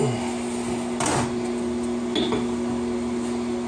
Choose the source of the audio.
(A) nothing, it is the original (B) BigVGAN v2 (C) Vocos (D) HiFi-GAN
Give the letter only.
A